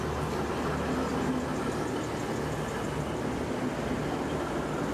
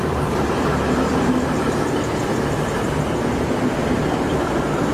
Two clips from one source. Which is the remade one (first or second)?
second